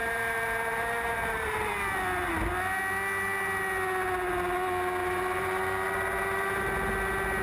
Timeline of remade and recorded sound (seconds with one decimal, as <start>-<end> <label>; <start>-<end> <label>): 0.0-1.7 remade; 1.7-5.0 recorded; 5.0-6.7 remade; 6.7-7.4 recorded